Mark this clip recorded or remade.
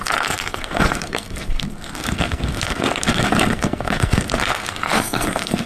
remade